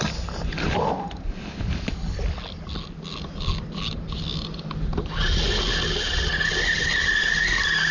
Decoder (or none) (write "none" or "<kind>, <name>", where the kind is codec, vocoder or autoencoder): none